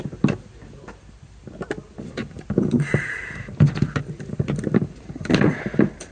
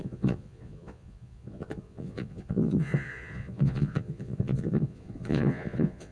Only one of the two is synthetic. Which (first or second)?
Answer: second